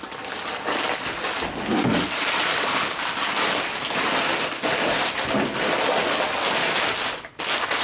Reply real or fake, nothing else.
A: real